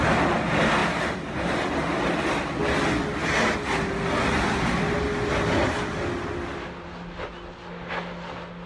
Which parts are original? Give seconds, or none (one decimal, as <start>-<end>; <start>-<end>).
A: 0.0-0.8; 1.7-8.7